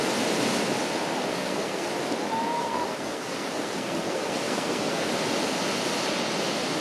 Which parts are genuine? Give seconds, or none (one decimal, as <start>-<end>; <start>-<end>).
0.0-1.3; 1.9-2.5; 5.1-6.8

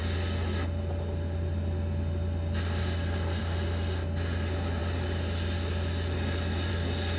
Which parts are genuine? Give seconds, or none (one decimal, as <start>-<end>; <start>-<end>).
0.0-7.2

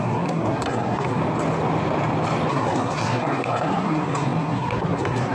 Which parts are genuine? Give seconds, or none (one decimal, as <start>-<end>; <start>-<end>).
1.2-2.5